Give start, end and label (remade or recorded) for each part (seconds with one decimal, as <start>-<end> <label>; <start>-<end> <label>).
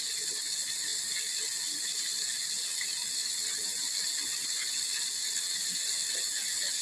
0.0-6.8 recorded